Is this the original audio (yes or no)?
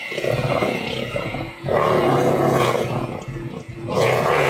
no